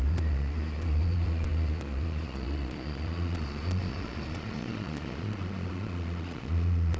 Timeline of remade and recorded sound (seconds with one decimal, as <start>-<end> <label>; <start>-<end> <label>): 0.0-7.0 remade